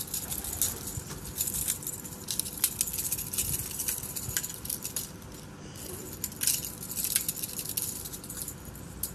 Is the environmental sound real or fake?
real